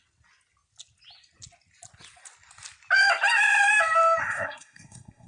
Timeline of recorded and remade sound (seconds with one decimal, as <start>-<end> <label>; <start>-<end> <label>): 0.0-4.2 recorded; 4.2-5.3 remade